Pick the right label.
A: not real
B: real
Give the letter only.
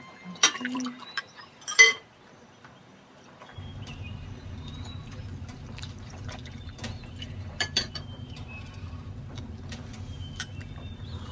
A